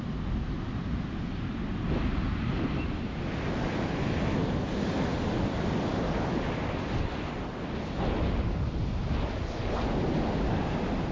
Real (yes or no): yes